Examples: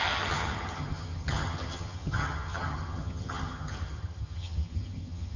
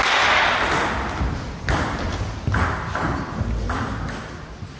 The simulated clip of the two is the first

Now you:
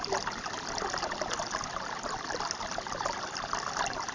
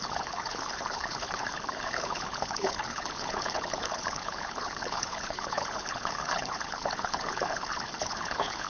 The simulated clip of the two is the second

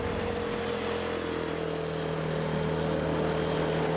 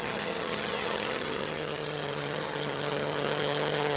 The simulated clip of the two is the second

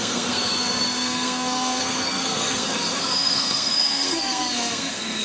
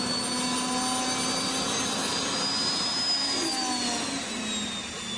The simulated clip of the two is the first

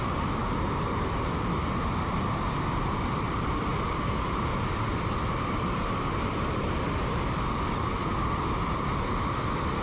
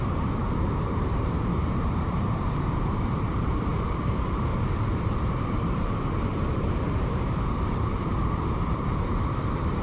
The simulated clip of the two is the second